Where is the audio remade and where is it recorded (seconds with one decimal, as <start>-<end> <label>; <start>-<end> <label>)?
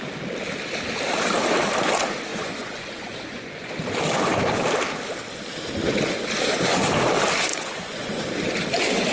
0.0-2.3 recorded; 2.3-3.7 remade; 3.7-7.5 recorded; 7.5-8.2 remade; 8.2-9.1 recorded